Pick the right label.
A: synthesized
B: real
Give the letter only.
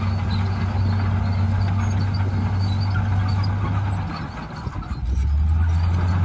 B